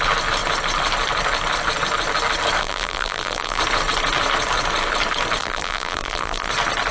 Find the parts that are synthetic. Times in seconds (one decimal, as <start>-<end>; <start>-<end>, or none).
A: 2.6-3.6; 5.4-6.5